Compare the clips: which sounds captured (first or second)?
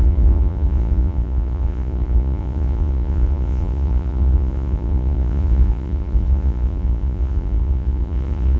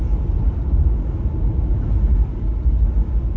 second